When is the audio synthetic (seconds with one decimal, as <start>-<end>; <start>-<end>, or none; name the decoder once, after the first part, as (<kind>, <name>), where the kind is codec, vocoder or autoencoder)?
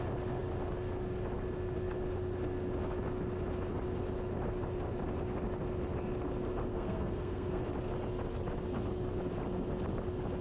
6.7-7.6 (codec, SNAC)